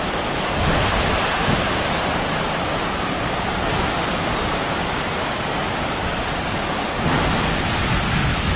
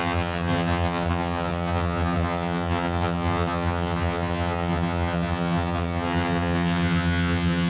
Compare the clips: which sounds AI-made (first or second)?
second